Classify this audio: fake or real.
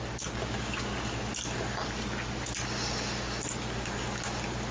real